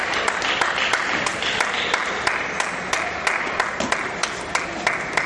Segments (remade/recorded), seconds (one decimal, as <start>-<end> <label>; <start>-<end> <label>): 0.0-5.3 recorded